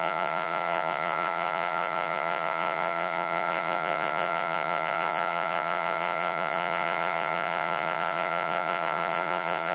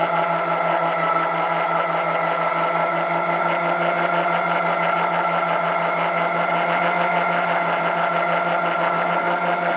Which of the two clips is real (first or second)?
second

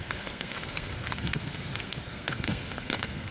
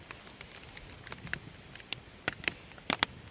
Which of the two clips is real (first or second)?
second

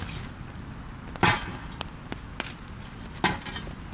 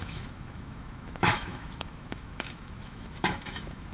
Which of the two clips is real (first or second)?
first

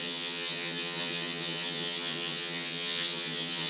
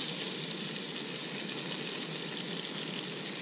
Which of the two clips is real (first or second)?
second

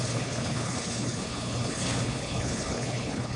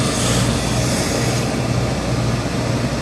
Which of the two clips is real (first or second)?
second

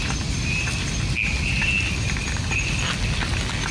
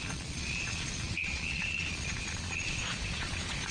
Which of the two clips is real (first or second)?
first